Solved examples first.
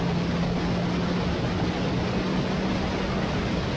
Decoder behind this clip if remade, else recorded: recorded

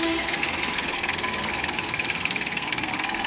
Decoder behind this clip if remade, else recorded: remade, codec, SNAC